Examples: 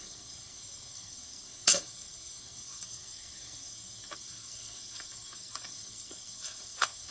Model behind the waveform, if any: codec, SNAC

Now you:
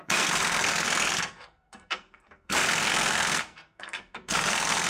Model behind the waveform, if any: codec, SNAC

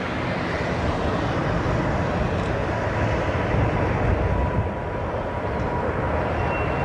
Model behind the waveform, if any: none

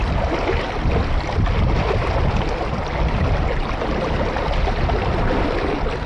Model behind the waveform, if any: none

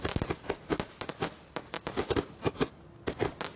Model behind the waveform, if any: none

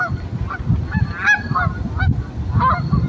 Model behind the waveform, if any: none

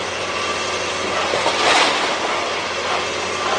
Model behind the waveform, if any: none